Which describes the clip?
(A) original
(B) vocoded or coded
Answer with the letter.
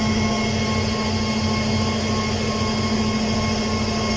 A